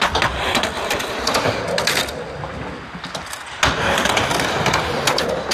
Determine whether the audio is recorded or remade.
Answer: recorded